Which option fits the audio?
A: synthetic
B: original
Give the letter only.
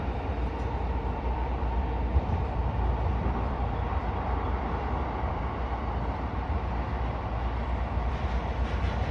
A